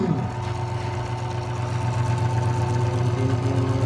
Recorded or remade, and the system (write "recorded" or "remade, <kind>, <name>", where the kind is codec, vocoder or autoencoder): recorded